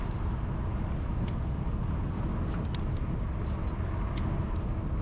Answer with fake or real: real